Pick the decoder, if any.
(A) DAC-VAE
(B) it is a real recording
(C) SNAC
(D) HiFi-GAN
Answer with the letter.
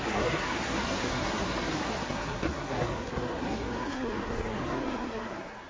C